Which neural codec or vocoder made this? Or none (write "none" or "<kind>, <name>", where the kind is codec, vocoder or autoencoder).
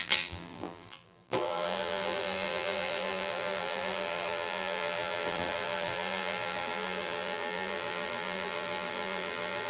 vocoder, BigVGAN v2